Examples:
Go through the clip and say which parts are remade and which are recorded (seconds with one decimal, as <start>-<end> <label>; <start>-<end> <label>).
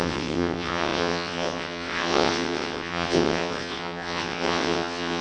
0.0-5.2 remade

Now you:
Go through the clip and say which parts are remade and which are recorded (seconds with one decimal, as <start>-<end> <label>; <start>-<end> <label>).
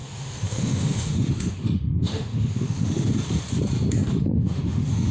0.0-3.1 remade; 3.1-4.1 recorded; 4.1-5.1 remade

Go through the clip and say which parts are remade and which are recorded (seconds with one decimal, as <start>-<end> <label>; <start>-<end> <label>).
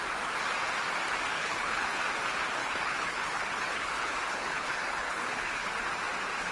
0.0-1.3 recorded; 1.3-2.0 remade; 2.0-2.6 recorded; 2.6-5.7 remade; 5.7-6.5 recorded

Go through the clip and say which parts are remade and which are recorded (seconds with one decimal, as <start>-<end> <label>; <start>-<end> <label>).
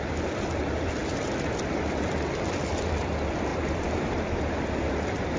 0.0-3.5 recorded; 3.5-4.1 remade; 4.1-5.4 recorded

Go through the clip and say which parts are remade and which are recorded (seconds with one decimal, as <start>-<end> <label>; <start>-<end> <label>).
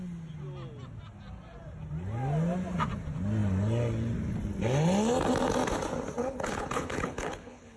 0.0-6.2 recorded; 6.2-7.8 remade